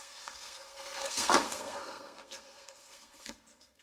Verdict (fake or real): fake